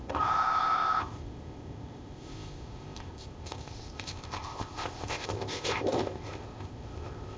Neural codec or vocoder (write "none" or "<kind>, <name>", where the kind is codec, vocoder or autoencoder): codec, ZipCodec